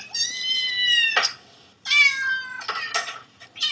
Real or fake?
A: real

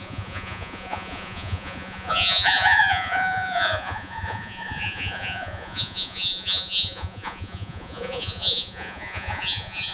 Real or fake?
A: fake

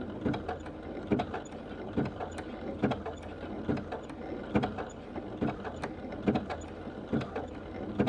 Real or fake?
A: real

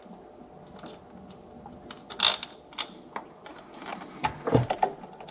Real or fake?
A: real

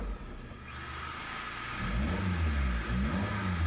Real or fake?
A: real